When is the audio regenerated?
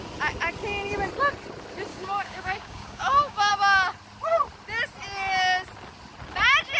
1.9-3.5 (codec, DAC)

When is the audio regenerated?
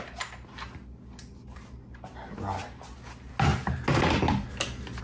none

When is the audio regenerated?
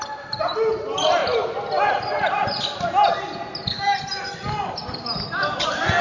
none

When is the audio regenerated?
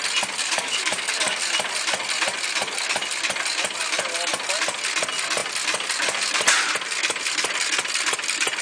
0.4-1.4 (codec, DAC)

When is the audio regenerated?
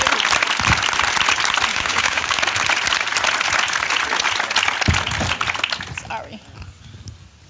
1.7-2.4 (codec, DAC)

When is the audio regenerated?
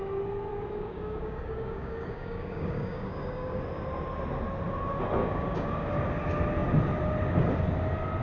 0.5-3.6 (codec, DAC); 5.2-5.9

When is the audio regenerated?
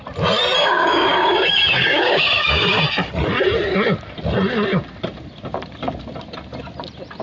0.6-2.8 (codec, DAC)